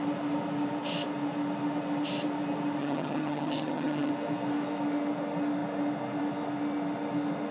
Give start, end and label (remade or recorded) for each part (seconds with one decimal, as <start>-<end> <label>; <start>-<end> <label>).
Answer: 0.0-2.8 recorded; 2.8-4.1 remade; 4.1-7.5 recorded